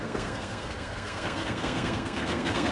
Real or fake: fake